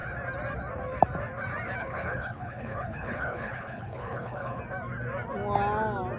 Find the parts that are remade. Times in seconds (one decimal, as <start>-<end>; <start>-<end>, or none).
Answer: 1.8-4.6